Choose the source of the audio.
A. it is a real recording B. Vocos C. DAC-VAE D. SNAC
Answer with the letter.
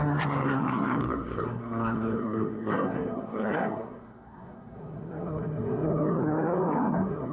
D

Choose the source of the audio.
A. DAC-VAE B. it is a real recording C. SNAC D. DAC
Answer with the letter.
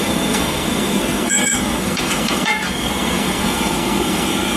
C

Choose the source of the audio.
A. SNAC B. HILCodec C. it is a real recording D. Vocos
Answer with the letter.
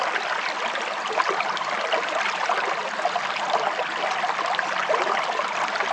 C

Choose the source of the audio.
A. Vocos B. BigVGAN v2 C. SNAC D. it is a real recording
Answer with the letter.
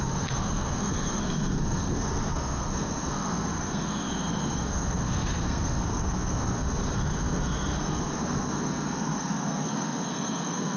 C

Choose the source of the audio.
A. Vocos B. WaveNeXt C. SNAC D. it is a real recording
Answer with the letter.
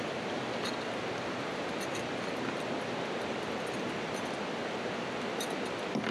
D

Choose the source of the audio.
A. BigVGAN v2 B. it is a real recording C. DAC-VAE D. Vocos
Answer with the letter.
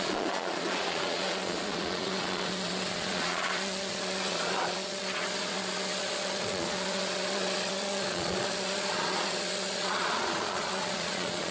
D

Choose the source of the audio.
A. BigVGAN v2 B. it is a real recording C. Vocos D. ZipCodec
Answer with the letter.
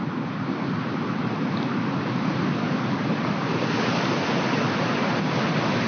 B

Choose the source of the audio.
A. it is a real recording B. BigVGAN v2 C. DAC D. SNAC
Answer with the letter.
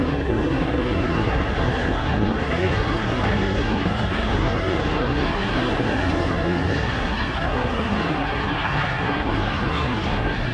D